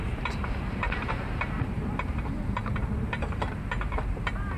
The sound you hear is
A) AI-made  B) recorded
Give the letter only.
A